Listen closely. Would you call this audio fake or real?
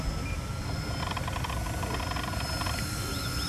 real